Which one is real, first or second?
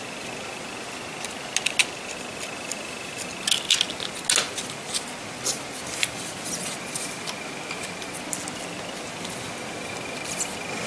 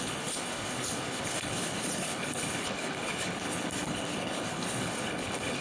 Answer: first